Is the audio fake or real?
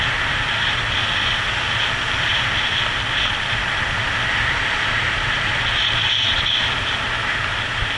real